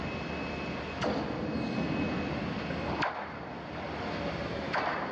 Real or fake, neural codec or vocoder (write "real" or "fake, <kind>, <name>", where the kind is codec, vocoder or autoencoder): real